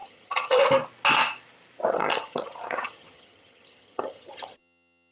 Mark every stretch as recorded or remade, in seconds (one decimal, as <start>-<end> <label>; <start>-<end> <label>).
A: 0.0-0.6 remade; 0.6-1.9 recorded; 1.9-5.1 remade